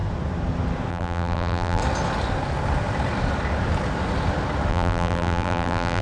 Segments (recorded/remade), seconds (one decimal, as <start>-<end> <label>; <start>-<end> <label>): 0.0-0.9 recorded; 0.9-1.8 remade; 1.8-4.7 recorded; 4.7-6.0 remade